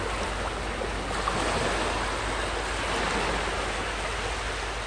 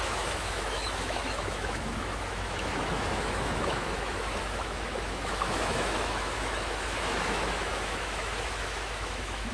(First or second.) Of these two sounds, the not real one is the second